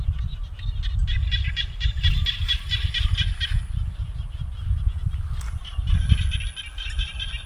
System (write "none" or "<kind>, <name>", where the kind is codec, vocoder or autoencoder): none